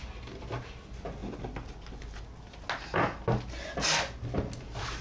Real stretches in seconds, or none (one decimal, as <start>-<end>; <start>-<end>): 0.0-5.0